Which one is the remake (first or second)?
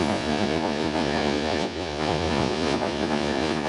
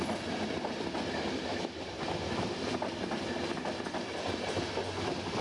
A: first